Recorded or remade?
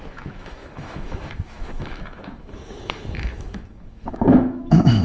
remade